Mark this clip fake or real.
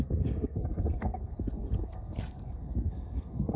fake